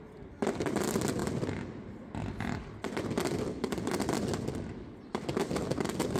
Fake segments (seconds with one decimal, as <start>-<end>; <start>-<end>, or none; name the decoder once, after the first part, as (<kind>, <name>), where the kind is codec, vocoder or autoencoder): none